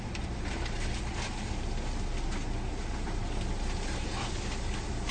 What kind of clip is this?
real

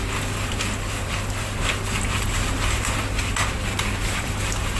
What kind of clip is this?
real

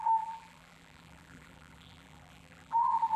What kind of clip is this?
fake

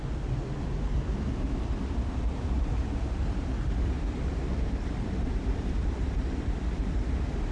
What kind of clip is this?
fake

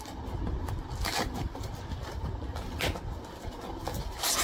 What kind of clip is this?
real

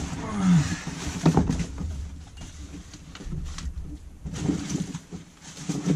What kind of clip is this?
fake